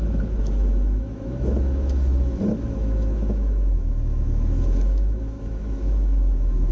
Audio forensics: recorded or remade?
remade